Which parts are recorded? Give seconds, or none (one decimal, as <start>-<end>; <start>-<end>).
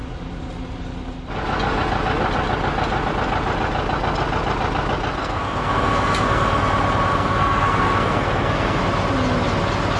0.0-5.2; 6.6-7.1; 8.8-10.0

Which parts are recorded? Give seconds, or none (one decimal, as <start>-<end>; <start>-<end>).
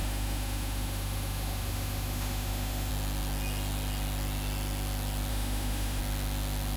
2.9-5.3; 6.0-6.8